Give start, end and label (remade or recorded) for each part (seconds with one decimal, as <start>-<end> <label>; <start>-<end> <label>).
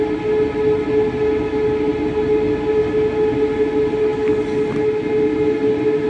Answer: 0.0-6.1 recorded